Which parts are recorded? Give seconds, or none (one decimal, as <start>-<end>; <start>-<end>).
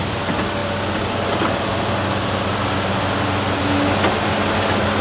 0.0-5.0